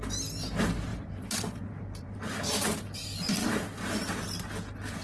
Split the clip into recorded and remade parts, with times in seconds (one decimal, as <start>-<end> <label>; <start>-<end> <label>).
0.0-0.9 recorded; 0.9-2.8 remade; 2.8-3.4 recorded; 3.4-4.1 remade; 4.1-5.0 recorded